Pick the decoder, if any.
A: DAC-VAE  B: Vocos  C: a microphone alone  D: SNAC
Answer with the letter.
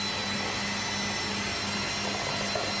C